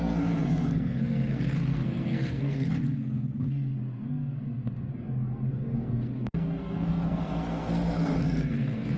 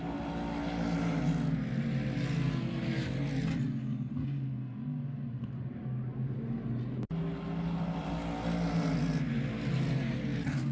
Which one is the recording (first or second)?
second